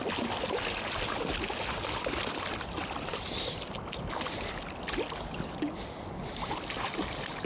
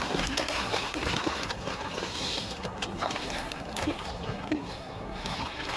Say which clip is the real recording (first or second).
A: first